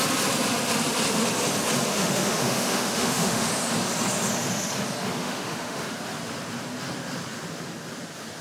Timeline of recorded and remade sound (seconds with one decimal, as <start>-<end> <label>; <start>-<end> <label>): 0.0-1.9 recorded; 1.9-3.5 remade; 3.5-5.2 recorded; 5.2-5.9 remade; 5.9-8.4 recorded